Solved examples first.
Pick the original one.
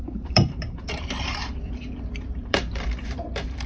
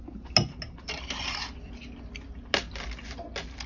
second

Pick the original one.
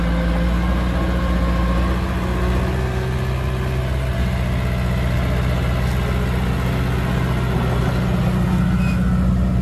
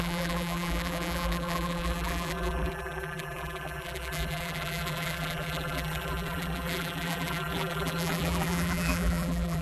first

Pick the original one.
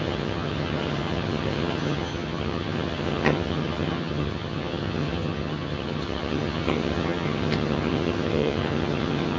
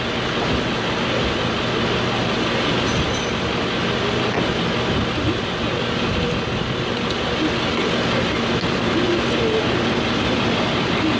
second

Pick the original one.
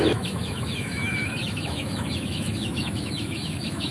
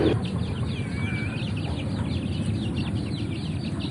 second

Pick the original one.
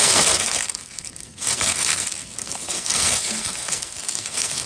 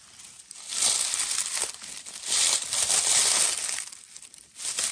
second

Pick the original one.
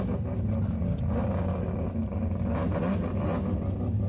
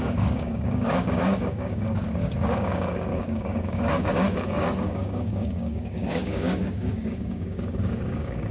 first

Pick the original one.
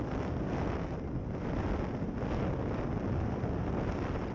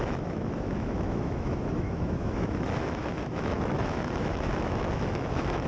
first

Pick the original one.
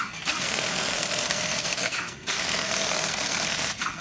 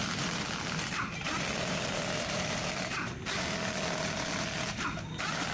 second